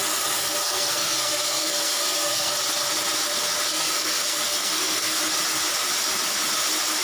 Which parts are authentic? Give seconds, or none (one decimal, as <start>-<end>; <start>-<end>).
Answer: 0.0-0.6; 2.5-3.7; 5.2-7.0